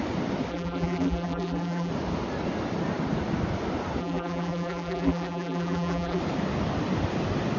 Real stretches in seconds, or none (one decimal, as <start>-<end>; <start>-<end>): 0.0-0.5; 1.9-4.0; 6.2-7.6